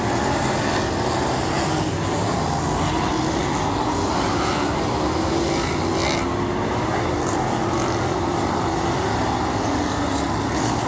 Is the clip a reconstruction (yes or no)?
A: no